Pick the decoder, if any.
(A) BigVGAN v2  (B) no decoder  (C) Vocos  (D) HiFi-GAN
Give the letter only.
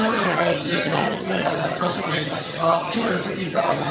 D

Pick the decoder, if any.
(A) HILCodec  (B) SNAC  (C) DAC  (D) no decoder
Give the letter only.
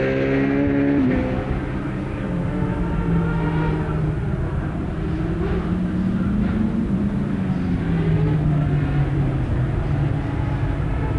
D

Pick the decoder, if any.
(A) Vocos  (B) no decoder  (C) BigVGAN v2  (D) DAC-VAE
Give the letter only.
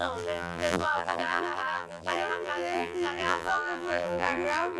C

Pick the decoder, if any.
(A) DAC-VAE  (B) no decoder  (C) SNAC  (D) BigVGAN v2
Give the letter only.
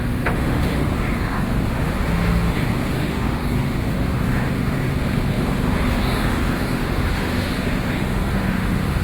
A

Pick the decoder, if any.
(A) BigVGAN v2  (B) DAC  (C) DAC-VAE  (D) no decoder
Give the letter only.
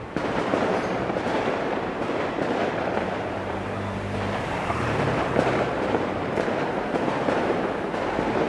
A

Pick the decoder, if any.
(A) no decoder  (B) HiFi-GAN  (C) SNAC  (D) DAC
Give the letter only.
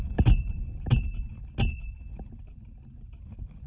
A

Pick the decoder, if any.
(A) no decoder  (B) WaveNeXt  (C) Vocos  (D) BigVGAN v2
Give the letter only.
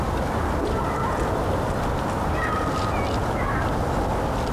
A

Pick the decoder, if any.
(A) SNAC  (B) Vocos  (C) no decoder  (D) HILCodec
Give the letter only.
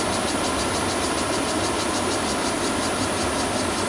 C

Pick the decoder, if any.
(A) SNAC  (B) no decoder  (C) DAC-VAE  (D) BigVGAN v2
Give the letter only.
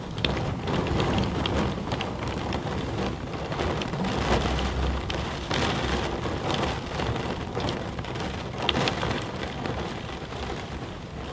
D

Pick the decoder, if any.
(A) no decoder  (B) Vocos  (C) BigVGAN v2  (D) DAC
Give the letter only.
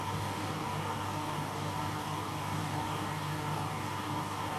D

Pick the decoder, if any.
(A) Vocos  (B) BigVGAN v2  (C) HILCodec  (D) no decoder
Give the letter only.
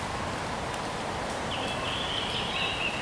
D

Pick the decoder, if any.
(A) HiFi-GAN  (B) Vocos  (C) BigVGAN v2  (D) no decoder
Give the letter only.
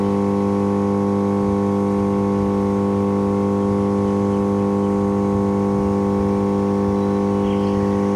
D